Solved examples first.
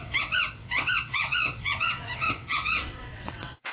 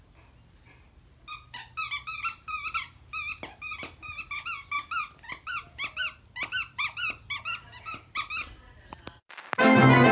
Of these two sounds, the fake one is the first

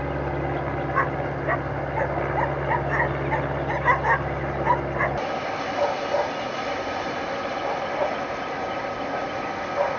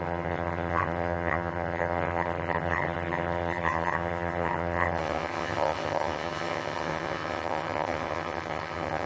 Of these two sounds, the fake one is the second